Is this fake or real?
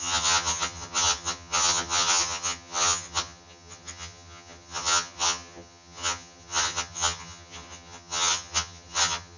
fake